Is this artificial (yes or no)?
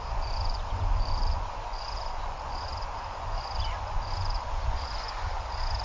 yes